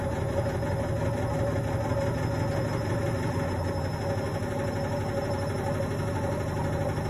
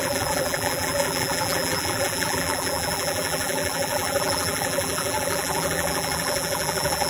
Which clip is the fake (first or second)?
second